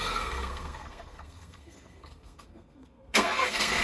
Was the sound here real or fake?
fake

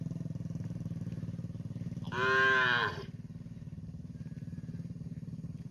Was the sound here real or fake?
fake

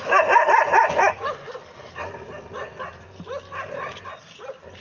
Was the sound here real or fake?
real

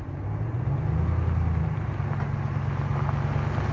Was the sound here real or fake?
real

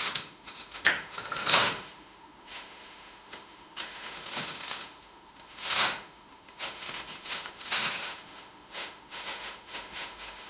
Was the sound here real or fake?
fake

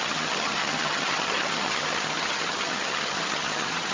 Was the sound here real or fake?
fake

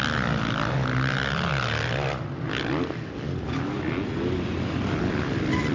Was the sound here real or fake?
real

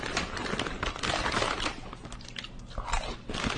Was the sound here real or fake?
real